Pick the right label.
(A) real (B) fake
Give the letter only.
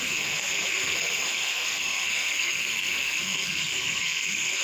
B